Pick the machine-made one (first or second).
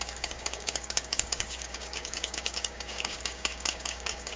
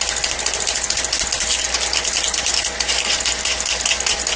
first